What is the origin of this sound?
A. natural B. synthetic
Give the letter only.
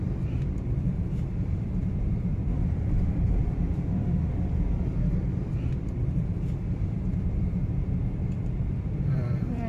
B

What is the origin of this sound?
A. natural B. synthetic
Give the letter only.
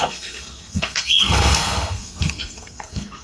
B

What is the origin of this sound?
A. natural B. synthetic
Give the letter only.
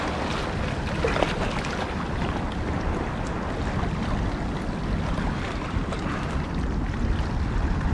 A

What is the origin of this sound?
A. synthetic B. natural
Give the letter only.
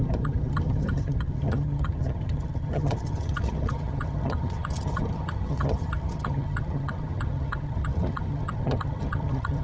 A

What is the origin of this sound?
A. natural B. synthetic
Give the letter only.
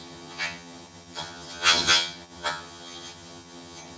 B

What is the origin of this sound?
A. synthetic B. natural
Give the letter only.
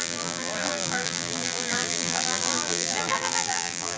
A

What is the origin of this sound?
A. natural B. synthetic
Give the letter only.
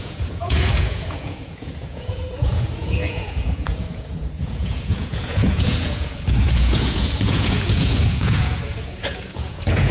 B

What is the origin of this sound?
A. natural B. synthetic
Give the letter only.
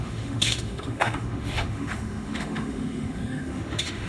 B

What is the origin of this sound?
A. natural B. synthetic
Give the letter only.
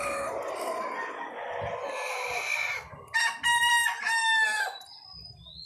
A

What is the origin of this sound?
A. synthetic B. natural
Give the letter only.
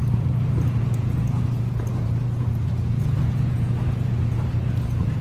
A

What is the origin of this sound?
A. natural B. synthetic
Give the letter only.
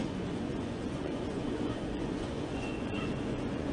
B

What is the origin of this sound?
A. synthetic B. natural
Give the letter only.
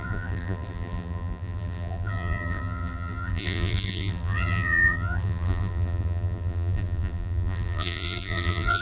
A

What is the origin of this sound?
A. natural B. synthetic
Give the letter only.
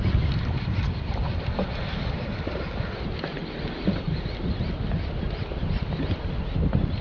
A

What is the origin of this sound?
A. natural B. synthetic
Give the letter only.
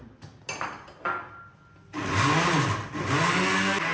A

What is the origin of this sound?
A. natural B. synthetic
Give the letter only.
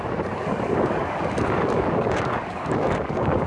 B